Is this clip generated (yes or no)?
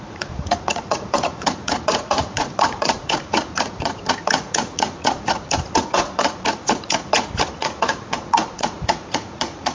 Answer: yes